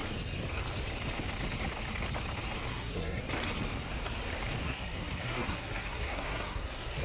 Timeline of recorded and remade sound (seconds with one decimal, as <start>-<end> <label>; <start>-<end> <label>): 0.0-2.7 recorded; 2.7-3.2 remade; 3.2-4.6 recorded; 4.6-7.0 remade